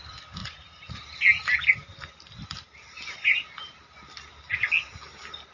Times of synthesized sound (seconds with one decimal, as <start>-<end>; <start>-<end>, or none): 0.4-0.9

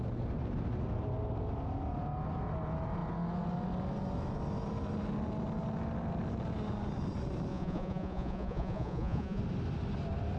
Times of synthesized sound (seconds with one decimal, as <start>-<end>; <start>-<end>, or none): 7.5-9.4

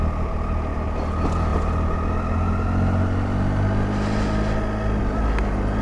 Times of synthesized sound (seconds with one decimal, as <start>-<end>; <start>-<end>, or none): none

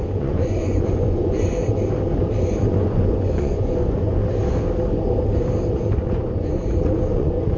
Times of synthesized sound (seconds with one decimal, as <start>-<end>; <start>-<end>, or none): 0.0-1.6; 2.4-4.2; 6.0-7.6

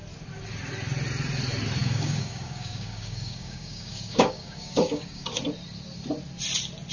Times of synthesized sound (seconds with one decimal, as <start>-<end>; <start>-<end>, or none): 1.8-5.3

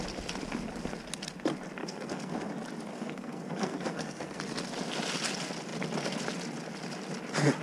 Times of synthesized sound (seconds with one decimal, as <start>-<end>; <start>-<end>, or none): 1.8-2.5; 2.9-4.4